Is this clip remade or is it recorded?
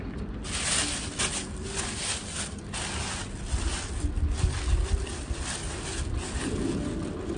recorded